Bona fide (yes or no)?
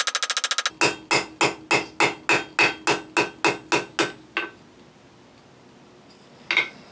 yes